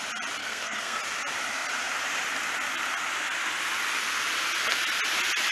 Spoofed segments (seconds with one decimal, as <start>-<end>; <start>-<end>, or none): 0.4-1.0